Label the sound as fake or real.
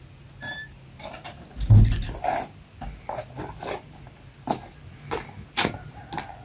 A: real